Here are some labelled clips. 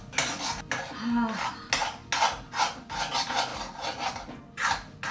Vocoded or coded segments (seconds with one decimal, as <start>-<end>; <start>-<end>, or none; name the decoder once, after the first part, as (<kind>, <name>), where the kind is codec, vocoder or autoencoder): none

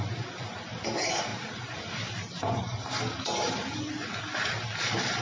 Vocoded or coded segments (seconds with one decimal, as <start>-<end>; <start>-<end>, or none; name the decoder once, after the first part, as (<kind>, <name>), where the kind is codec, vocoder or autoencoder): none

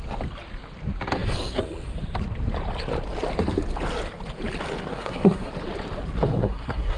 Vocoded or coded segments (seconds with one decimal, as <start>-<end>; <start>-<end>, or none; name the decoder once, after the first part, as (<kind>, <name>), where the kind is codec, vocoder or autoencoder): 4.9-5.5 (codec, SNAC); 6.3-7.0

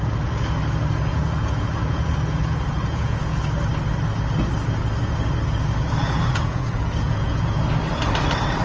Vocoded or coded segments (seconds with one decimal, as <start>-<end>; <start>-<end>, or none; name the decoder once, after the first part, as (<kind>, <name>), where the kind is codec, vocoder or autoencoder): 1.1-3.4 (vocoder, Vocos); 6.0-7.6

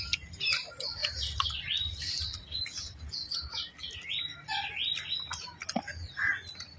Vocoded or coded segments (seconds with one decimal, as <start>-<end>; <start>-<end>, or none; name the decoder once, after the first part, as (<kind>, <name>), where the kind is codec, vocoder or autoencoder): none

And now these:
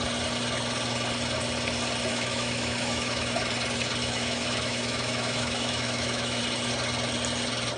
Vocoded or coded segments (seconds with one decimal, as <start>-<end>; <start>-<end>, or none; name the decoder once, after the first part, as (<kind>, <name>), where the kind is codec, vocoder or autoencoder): 2.1-3.4 (autoencoder, DAC-VAE); 4.0-6.4

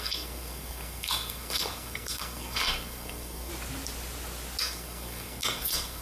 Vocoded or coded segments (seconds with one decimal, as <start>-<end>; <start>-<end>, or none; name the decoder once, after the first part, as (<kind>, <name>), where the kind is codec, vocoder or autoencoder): 0.0-3.5 (codec, SNAC); 4.6-6.0

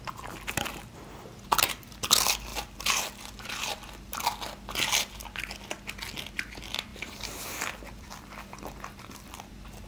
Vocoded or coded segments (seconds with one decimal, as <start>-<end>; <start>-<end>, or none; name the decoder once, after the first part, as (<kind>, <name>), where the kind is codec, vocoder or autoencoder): 2.5-5.1 (vocoder, BigVGAN v2); 6.9-9.5